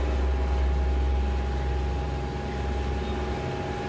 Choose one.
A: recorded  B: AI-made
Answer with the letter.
A